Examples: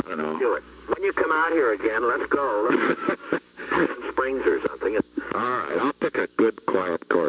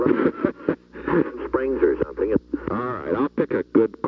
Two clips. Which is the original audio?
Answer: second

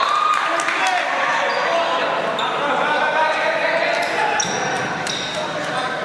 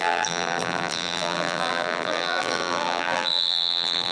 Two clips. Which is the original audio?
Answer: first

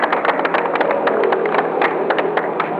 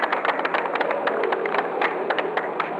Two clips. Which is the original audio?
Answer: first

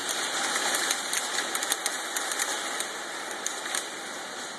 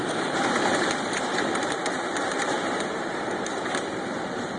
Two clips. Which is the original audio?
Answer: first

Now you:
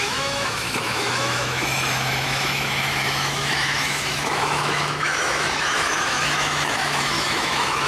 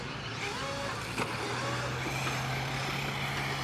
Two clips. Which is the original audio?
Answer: second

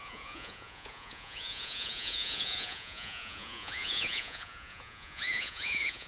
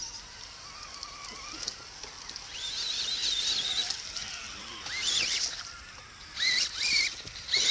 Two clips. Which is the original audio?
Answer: second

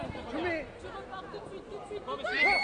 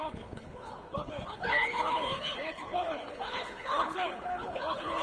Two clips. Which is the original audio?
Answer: first